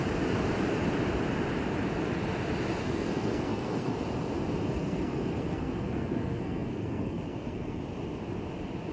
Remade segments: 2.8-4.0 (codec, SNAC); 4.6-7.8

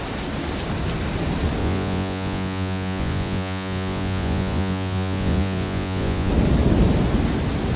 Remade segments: 1.6-6.3 (vocoder, Vocos)

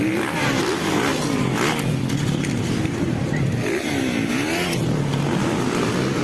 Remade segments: none

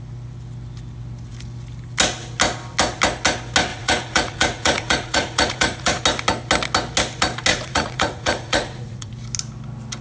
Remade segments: 3.7-6.0 (vocoder, Vocos); 7.5-9.1

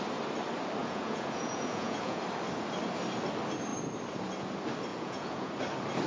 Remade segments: 0.8-2.2 (vocoder, Vocos); 4.9-5.5